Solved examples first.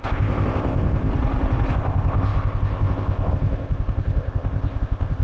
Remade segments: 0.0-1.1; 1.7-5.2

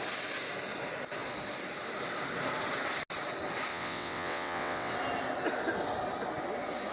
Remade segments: 3.7-4.9

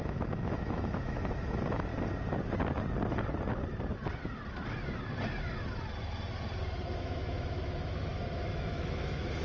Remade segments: 0.0-1.9; 7.0-9.4

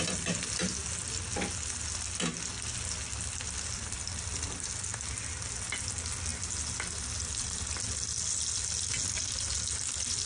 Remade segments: none

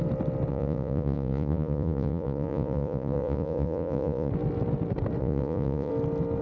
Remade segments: 0.5-4.3; 5.2-5.9

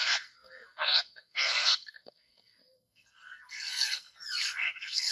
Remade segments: 0.0-5.1

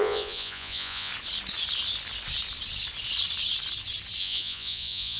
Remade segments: 0.0-1.1; 4.2-5.2

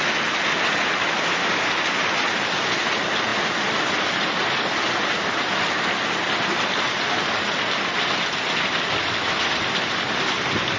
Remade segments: none